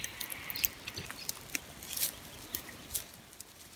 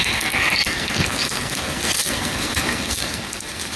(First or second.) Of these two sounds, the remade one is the second